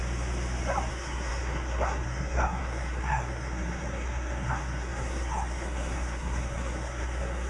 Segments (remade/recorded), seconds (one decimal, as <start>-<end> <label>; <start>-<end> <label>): 0.0-0.9 recorded; 0.9-7.5 remade